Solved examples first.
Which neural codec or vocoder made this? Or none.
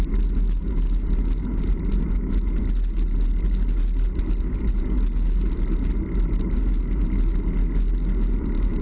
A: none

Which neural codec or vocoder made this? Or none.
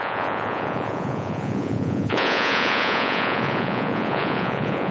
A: vocoder, Vocos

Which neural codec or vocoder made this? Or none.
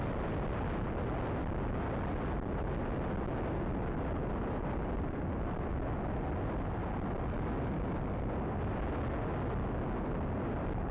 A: none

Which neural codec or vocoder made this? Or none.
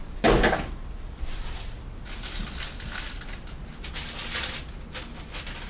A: none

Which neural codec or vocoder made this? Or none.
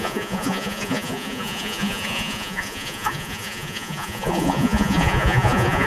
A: vocoder, Vocos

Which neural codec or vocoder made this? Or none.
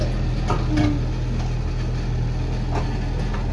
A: none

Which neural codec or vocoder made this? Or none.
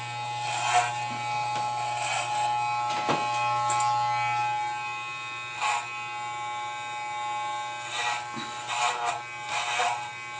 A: none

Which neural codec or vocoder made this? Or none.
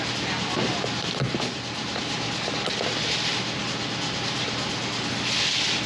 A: none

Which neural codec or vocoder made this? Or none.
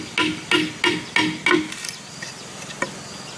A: none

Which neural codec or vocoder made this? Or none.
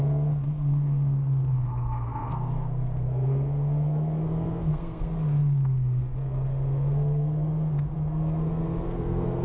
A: codec, SNAC